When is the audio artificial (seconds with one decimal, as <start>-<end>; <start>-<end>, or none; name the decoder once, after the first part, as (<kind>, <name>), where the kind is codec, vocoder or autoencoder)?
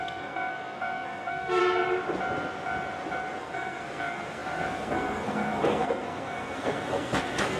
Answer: 0.0-1.6 (codec, SNAC); 3.4-7.6